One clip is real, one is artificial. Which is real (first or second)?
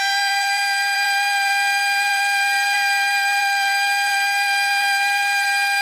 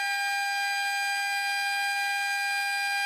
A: second